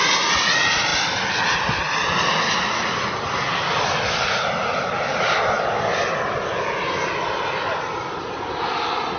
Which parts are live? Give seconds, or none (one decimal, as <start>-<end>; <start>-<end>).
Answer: 0.0-9.2